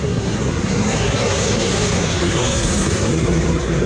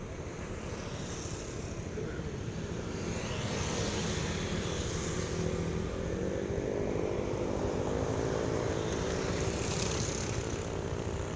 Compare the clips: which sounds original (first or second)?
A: second